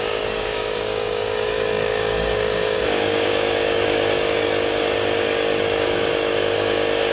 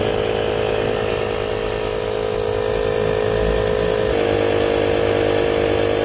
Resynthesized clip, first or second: first